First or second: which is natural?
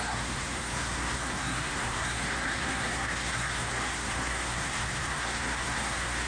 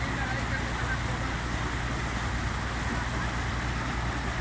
second